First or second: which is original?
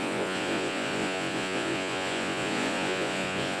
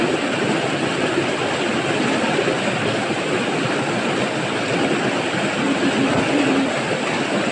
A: second